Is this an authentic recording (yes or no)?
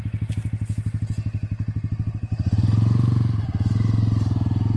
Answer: yes